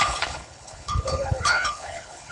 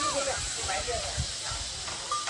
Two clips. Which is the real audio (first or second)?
second